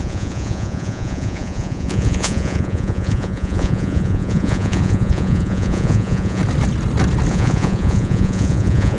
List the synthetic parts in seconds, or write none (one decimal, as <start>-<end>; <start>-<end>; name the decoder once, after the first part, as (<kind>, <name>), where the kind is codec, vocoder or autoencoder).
0.0-6.4 (vocoder, Vocos); 7.3-9.0